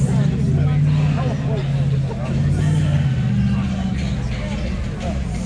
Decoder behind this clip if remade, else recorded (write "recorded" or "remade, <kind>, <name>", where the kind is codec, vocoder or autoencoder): recorded